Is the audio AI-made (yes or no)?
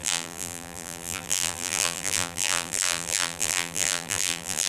yes